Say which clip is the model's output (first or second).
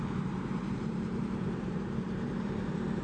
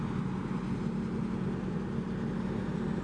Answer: first